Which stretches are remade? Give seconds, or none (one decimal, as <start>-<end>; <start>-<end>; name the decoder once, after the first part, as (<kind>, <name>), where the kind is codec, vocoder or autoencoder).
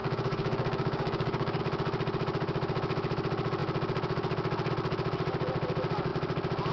0.0-1.6 (codec, DAC)